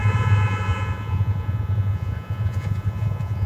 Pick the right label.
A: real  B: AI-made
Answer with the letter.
B